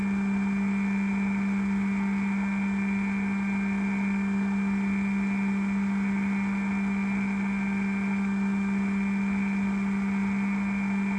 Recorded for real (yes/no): yes